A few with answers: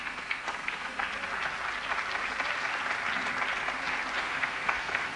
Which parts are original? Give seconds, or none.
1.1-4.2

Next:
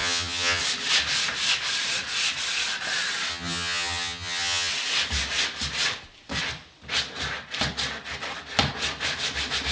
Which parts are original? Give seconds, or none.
0.6-3.3; 4.7-9.7

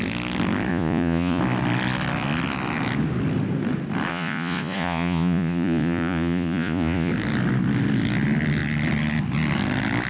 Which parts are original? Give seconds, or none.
0.0-0.7; 1.4-4.1; 7.1-10.1

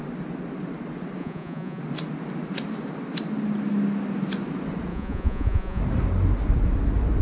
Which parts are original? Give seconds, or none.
0.0-1.2; 1.8-4.9; 5.8-7.2

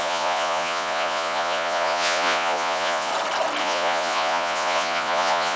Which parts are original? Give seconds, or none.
3.1-3.6

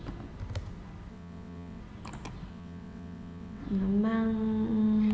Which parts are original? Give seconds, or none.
0.0-1.1; 1.8-2.5; 3.6-5.1

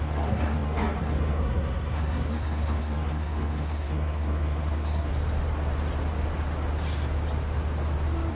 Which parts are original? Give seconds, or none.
5.1-8.3